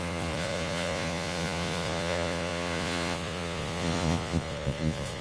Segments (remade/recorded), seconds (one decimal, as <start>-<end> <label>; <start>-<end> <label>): 0.0-5.2 remade